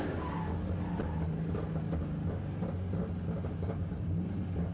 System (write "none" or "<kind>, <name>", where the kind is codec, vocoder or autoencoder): none